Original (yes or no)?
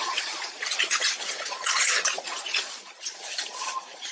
no